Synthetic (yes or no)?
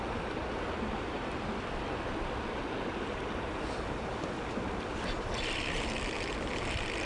no